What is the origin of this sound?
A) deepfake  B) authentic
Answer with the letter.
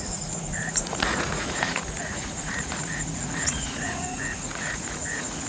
A